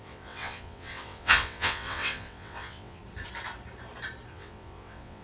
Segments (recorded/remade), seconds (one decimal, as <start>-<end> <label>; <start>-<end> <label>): 0.0-3.0 remade; 3.0-4.3 recorded; 4.3-5.2 remade